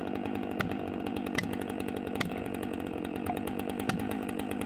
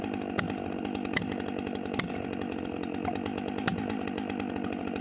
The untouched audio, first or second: second